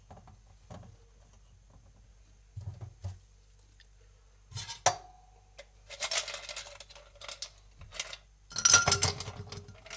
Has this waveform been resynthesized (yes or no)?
no